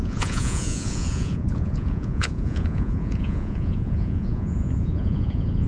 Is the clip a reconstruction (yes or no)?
yes